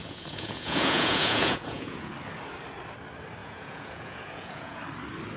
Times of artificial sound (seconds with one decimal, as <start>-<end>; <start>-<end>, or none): 0.0-2.1; 3.4-4.8